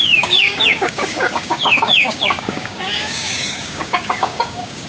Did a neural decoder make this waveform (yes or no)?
yes